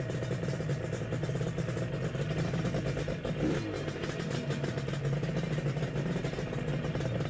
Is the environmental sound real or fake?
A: real